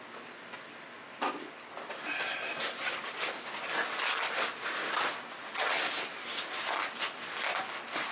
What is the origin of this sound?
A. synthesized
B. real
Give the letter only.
B